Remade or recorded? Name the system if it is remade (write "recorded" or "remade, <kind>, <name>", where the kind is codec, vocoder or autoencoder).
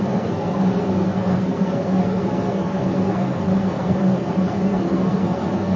remade, codec, SNAC